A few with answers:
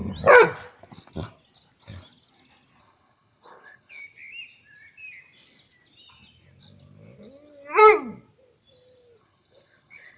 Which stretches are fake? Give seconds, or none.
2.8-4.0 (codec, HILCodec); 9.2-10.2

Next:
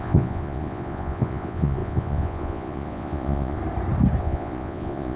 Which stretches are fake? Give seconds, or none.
0.0-3.6 (vocoder, Vocos); 4.2-5.2

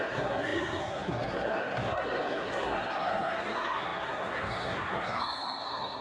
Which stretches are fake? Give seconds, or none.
0.0-6.0 (codec, SNAC)